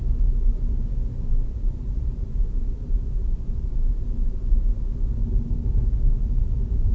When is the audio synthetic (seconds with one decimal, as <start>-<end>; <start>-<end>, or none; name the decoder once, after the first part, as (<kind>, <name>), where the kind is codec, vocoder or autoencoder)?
1.3-4.7 (vocoder, BigVGAN v2); 5.2-5.7